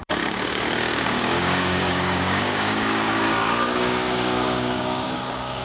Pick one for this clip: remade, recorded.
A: remade